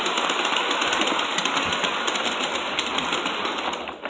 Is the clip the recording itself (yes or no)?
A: yes